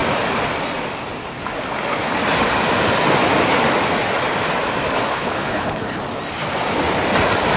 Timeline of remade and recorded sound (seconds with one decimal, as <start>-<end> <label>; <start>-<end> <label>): 0.0-5.1 recorded; 5.1-6.0 remade; 6.0-7.6 recorded